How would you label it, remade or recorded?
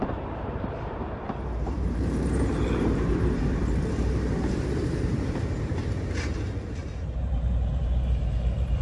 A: remade